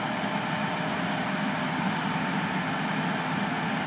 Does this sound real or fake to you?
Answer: real